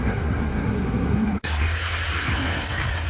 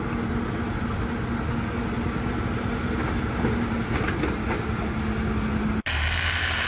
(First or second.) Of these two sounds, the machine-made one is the first